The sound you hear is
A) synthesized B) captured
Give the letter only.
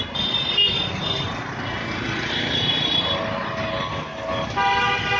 B